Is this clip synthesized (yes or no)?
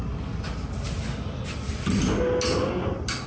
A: no